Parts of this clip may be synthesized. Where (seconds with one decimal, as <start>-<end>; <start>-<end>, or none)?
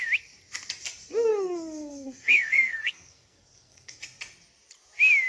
1.3-4.0